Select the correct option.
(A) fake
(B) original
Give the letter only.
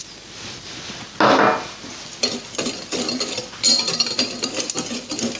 B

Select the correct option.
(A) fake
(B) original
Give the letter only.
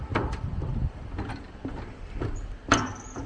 B